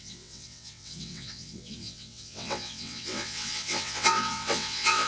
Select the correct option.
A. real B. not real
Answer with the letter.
B